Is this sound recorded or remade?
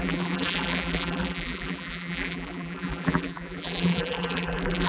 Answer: remade